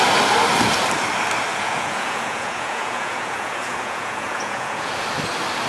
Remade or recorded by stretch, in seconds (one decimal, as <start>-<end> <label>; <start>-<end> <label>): 0.0-1.5 recorded; 1.5-4.9 remade; 4.9-5.7 recorded